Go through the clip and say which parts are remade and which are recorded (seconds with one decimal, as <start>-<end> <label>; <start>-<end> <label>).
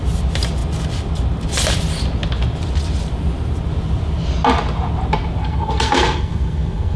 0.0-5.4 recorded; 5.4-7.0 remade